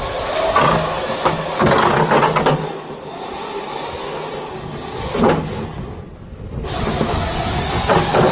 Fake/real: real